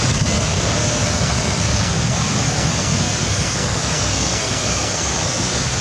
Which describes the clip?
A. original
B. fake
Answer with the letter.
B